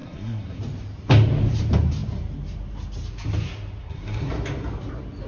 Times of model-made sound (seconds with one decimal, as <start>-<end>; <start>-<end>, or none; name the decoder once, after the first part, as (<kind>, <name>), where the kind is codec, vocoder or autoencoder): 0.0-0.6 (codec, SNAC); 3.8-4.3